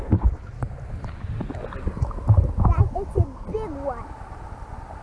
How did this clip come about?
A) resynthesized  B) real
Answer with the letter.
B